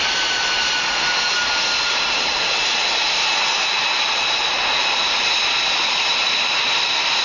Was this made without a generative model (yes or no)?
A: yes